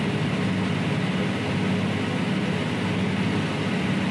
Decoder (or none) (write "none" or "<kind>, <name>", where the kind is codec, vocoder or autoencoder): none